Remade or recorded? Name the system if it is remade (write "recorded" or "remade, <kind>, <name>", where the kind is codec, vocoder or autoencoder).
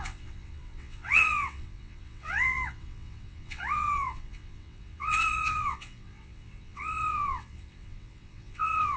remade, vocoder, WaveNeXt